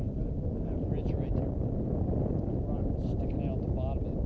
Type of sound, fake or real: real